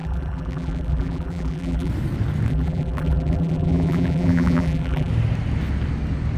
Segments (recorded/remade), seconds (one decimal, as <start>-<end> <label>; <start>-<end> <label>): 0.0-1.9 remade; 1.9-2.5 recorded; 2.5-5.1 remade; 5.1-6.4 recorded

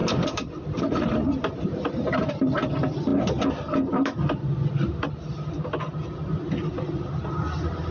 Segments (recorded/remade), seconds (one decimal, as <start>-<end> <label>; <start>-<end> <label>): 0.0-2.3 remade; 2.3-7.9 recorded

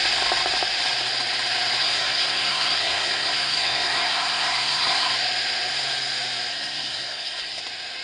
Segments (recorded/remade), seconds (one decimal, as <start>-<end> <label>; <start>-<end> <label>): 0.0-1.8 recorded; 1.8-5.1 remade; 5.1-6.5 recorded; 6.5-7.6 remade; 7.6-8.0 recorded

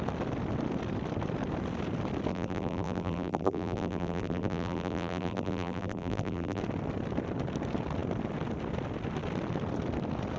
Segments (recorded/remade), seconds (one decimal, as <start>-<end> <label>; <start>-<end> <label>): 0.0-2.3 recorded; 2.3-6.6 remade; 6.6-10.4 recorded

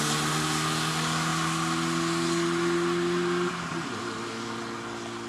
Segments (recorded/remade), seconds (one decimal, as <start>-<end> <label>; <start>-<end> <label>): 0.0-5.3 recorded